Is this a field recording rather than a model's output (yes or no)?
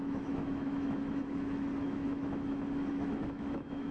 no